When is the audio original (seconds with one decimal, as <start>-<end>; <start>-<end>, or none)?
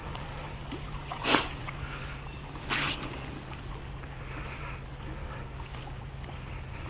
2.1-5.2; 5.9-6.9